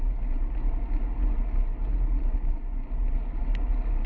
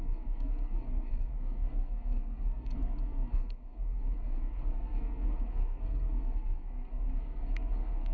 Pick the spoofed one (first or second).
second